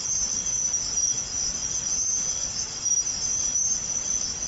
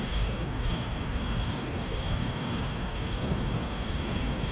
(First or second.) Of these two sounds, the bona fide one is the first